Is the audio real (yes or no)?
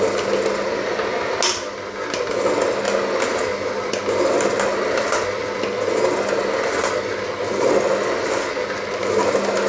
yes